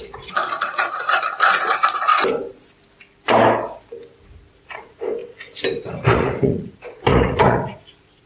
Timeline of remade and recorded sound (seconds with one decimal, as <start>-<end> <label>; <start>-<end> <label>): 0.0-2.1 remade; 2.1-4.5 recorded; 4.5-5.2 remade; 5.2-5.8 recorded; 5.8-8.3 remade